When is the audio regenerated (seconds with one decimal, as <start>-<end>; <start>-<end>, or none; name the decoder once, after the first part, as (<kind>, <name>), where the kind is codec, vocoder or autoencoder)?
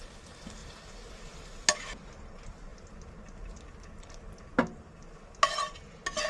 none